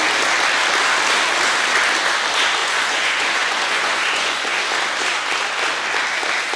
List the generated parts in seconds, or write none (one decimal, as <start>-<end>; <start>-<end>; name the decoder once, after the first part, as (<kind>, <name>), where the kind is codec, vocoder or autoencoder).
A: 2.6-4.6 (vocoder, Vocos)